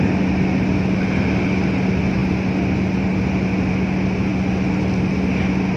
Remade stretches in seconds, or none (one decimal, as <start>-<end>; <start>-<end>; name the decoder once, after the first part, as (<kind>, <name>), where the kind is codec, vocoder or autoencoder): none